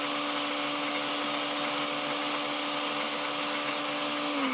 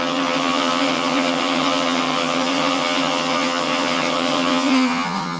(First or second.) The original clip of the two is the first